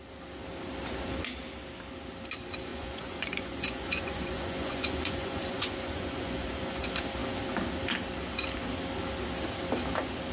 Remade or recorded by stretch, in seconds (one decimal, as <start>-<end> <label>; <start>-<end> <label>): 0.0-2.7 recorded; 2.7-6.8 remade; 6.8-10.3 recorded